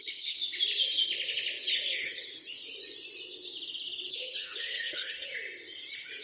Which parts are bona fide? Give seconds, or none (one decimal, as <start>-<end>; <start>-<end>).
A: 0.4-2.0; 2.6-4.1; 5.3-6.2